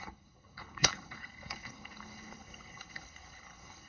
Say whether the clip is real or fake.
fake